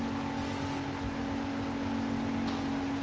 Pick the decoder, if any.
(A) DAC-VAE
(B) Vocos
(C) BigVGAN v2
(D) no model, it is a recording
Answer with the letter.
D